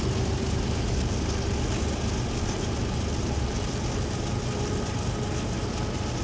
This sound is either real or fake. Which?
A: real